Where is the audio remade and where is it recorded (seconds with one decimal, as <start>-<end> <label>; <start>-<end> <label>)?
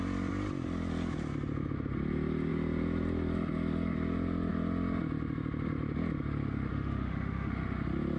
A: 0.0-6.7 recorded; 6.7-7.5 remade; 7.5-8.2 recorded